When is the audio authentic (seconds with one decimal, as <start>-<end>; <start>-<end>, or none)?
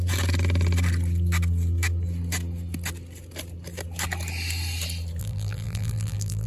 0.0-5.2